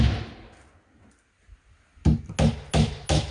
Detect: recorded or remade recorded